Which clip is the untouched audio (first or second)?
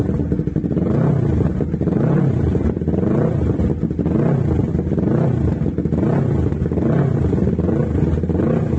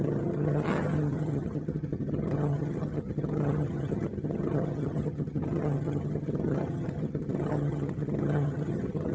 first